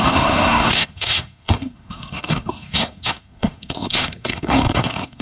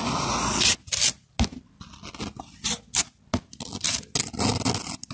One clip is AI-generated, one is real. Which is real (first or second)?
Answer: second